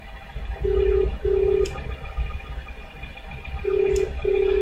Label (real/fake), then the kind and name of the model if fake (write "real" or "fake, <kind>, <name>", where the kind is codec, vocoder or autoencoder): real